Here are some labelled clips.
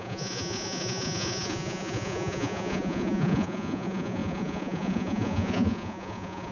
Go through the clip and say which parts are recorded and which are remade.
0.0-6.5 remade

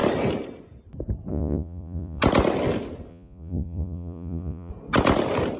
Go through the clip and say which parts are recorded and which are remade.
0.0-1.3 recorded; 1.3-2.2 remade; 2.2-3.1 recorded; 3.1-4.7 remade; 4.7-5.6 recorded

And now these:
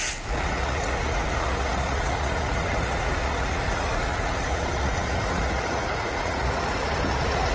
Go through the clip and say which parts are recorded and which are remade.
0.0-7.5 remade